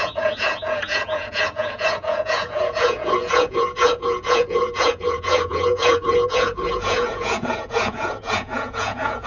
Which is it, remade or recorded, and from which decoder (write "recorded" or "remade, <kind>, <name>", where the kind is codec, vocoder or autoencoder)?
remade, vocoder, Vocos